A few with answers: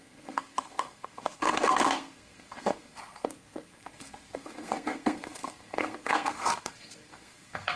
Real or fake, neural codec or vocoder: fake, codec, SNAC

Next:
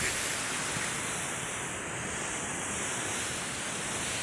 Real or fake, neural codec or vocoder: real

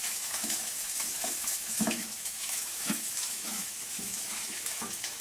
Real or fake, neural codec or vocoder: fake, autoencoder, DAC-VAE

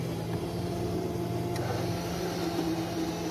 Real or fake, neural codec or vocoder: real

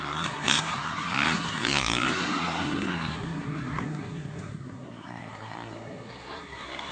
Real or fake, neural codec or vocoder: fake, codec, SNAC